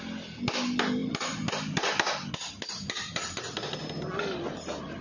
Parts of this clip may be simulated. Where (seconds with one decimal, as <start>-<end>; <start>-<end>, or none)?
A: none